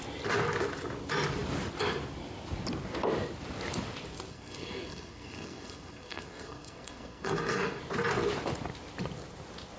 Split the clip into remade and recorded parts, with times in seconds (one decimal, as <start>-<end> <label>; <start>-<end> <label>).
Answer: 0.0-4.3 recorded; 4.3-7.8 remade; 7.8-9.8 recorded